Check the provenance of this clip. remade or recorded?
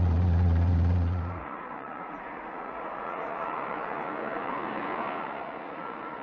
remade